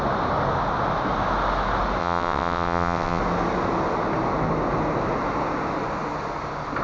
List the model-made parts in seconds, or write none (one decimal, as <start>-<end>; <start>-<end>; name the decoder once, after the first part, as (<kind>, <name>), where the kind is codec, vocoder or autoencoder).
2.0-3.2 (vocoder, WaveNeXt)